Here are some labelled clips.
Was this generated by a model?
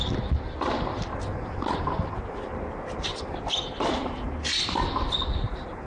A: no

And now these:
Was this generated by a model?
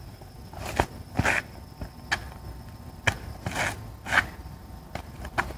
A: no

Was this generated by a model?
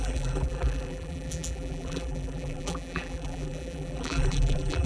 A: yes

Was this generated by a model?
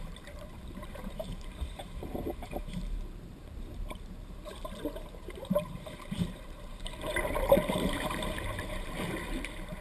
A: yes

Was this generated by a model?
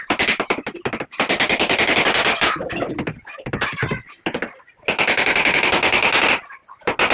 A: no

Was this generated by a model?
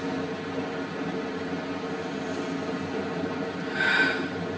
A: no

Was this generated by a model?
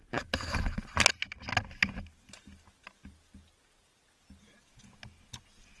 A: no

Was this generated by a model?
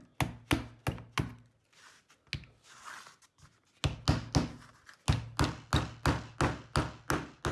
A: no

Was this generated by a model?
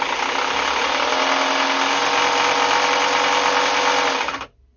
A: no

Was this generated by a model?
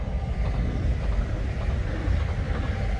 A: no